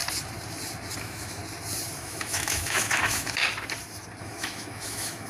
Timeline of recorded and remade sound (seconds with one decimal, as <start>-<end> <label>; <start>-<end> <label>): 0.0-1.0 recorded; 1.0-1.4 remade; 1.4-2.0 recorded; 2.0-3.4 remade; 3.4-4.2 recorded; 4.2-5.3 remade